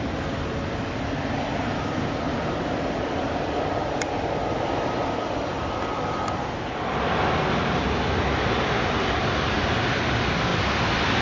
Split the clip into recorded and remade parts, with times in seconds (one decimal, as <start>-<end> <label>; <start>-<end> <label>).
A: 0.0-11.2 recorded

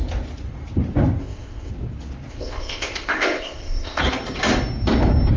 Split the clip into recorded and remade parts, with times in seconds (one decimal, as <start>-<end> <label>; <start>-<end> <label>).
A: 0.0-1.2 recorded; 1.2-1.7 remade; 1.7-2.3 recorded; 2.3-4.0 remade; 4.0-5.4 recorded

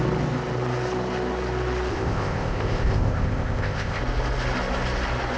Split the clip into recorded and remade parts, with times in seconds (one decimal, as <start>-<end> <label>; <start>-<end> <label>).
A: 0.0-1.9 recorded; 1.9-4.0 remade; 4.0-5.4 recorded

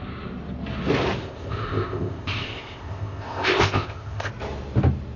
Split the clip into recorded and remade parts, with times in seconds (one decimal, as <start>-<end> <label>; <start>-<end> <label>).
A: 0.0-1.2 recorded; 1.2-4.3 remade; 4.3-5.2 recorded